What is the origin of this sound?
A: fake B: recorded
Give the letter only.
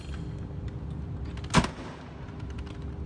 B